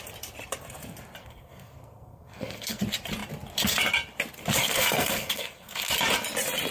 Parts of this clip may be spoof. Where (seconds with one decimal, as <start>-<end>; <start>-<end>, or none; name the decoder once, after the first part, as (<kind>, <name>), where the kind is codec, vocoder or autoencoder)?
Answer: 1.2-2.8 (codec, SNAC); 4.6-5.9